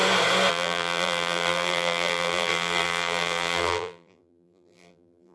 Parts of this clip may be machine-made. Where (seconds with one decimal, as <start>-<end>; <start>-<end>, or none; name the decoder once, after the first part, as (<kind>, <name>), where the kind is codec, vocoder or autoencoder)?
0.5-5.3 (vocoder, BigVGAN v2)